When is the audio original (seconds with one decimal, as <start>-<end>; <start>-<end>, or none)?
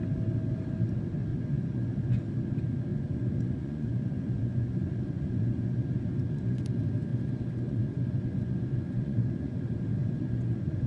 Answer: 0.0-1.3; 2.2-2.9; 6.6-7.1; 9.6-10.0